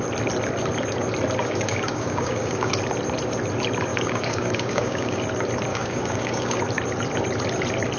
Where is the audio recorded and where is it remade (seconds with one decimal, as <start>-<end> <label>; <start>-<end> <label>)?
0.0-1.4 recorded; 1.4-2.7 remade; 2.7-3.9 recorded; 3.9-5.2 remade; 5.2-5.7 recorded; 5.7-6.6 remade; 6.6-8.0 recorded